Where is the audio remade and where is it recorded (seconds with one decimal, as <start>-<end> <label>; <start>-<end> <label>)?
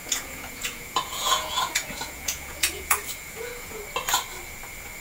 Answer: 0.0-3.8 remade; 3.8-5.0 recorded